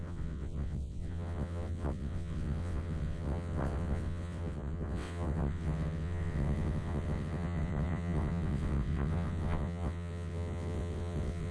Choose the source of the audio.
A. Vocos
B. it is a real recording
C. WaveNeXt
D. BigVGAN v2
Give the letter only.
C